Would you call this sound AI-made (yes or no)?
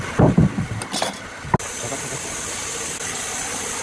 no